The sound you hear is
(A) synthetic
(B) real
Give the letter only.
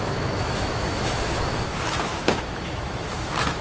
A